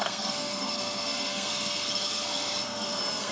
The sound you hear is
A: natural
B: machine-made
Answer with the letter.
B